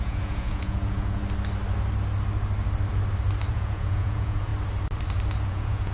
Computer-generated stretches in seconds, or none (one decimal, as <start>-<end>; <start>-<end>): 0.0-1.2; 3.5-4.5; 5.5-5.9